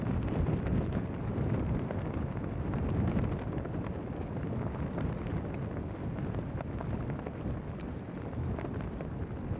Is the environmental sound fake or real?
real